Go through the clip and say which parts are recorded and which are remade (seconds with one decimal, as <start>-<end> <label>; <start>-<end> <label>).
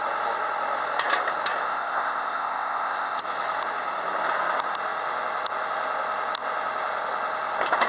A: 0.0-1.6 recorded; 1.6-3.2 remade; 3.2-7.9 recorded